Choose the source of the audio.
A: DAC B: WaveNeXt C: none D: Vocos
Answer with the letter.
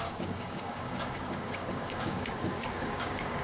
A